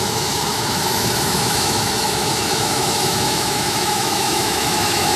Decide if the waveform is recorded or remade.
remade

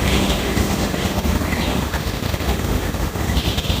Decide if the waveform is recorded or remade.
remade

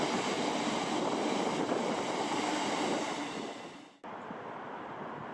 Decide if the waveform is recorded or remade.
recorded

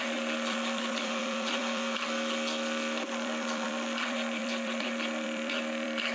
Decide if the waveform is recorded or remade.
remade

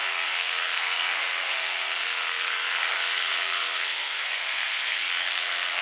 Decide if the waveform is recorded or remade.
remade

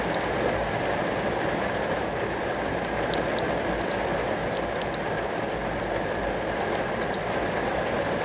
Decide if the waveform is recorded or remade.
recorded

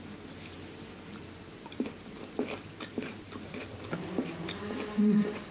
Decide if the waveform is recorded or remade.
recorded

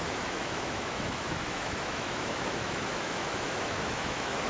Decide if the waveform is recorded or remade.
remade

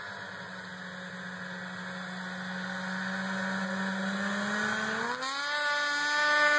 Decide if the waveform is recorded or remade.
recorded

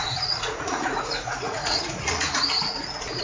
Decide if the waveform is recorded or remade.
remade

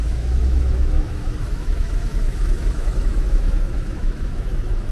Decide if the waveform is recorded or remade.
remade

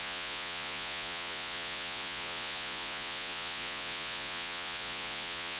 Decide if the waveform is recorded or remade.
remade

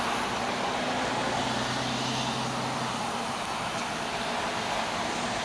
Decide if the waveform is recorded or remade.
recorded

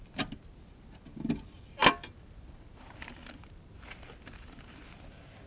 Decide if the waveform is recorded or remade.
recorded